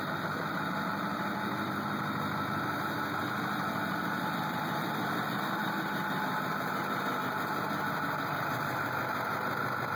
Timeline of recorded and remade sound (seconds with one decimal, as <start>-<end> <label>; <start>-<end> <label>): 0.0-10.0 recorded